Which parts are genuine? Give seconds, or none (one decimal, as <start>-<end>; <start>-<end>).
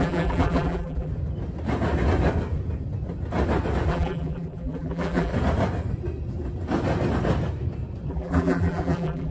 1.1-3.9; 5.3-8.1